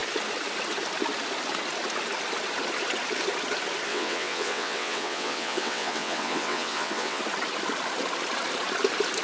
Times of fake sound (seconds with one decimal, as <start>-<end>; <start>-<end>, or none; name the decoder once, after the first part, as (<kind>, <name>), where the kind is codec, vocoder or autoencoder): 3.9-7.2 (vocoder, WaveNeXt)